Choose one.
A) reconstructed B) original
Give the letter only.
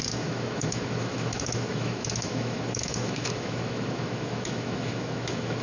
A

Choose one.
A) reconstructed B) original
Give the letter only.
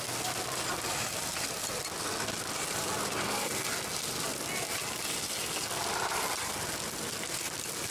B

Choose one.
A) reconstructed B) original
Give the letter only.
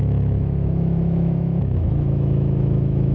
A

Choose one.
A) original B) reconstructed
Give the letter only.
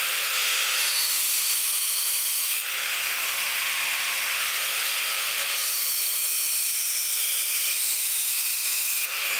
B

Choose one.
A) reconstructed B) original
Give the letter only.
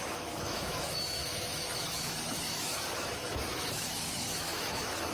A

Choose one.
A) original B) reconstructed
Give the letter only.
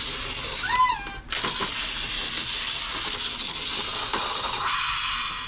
A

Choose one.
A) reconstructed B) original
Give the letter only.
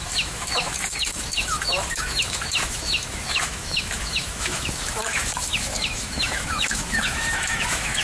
A